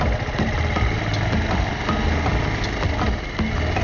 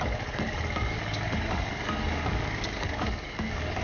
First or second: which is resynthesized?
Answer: second